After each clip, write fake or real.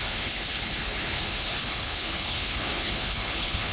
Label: fake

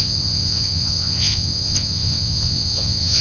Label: fake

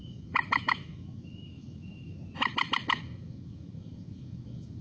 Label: fake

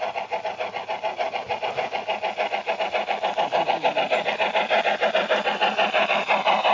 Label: real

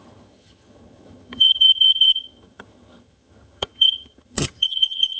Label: fake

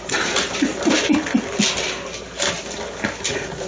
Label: real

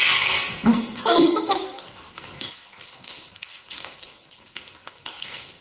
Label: fake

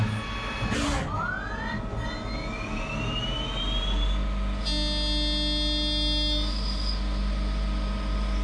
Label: real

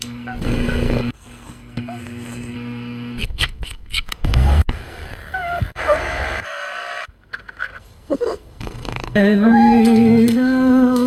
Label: fake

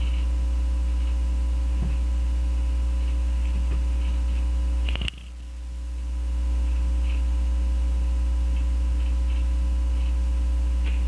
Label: real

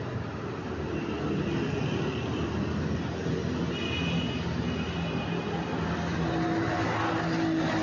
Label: real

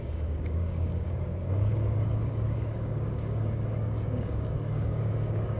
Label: fake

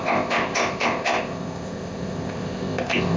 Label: fake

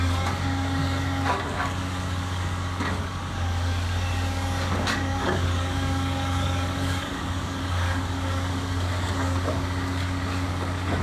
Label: fake